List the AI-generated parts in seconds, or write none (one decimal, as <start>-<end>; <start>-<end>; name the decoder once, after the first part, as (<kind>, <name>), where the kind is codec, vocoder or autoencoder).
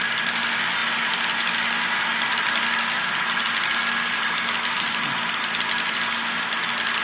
none